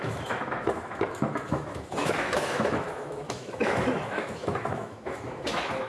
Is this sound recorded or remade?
remade